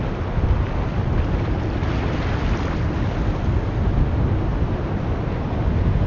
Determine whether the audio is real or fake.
real